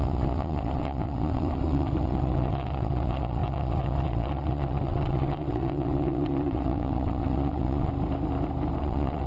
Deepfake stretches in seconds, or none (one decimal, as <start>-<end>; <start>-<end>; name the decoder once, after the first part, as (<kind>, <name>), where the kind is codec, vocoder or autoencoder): 0.0-7.9 (vocoder, WaveNeXt); 8.8-9.3